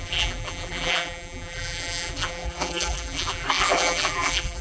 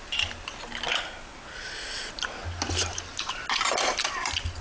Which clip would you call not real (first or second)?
first